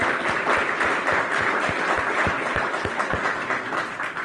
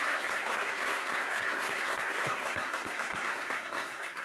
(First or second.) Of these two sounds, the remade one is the second